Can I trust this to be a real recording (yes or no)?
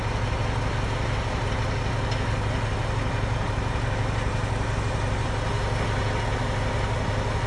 yes